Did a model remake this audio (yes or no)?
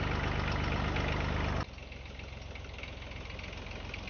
no